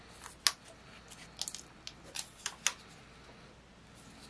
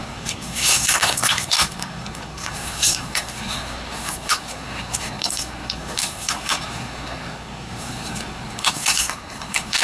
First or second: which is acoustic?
first